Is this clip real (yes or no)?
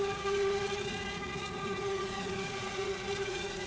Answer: no